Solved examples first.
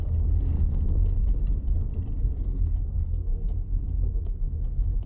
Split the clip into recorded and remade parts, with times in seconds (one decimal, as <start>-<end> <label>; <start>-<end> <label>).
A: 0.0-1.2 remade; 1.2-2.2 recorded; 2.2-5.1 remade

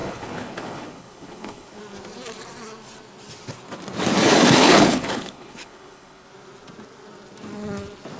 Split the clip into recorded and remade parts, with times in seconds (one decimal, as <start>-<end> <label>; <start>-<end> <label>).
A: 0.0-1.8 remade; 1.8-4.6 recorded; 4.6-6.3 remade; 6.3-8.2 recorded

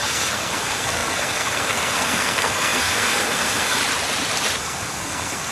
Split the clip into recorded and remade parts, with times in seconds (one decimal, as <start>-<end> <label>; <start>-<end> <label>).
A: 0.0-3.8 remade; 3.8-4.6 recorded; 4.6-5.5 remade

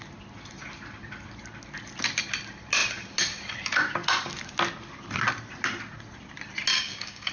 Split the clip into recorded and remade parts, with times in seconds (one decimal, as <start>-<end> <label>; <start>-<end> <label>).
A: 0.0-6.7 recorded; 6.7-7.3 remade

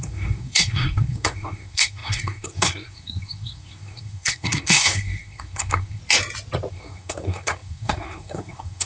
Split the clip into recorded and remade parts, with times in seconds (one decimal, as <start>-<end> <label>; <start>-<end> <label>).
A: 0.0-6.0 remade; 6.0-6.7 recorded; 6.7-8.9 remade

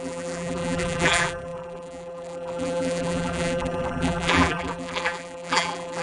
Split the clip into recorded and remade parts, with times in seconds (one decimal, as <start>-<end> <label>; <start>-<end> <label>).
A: 0.0-6.0 remade

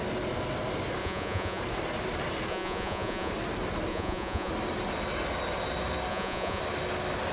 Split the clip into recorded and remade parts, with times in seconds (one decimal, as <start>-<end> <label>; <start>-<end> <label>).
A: 0.0-1.0 recorded; 1.0-1.6 remade; 1.6-2.5 recorded; 2.5-3.3 remade; 3.3-3.9 recorded; 3.9-4.5 remade; 4.5-6.1 recorded; 6.1-6.6 remade; 6.6-7.3 recorded